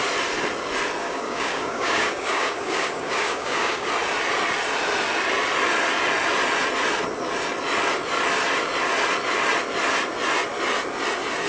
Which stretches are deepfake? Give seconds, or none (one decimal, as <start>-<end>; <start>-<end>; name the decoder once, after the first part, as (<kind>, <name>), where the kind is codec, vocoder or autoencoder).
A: 1.0-3.9 (codec, DAC)